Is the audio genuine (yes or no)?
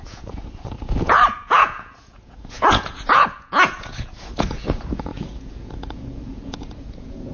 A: no